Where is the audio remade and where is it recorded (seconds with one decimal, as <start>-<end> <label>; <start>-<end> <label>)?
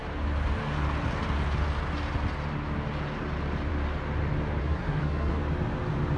0.0-4.6 recorded; 4.6-5.4 remade; 5.4-6.2 recorded